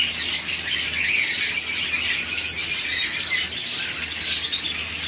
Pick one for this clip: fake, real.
real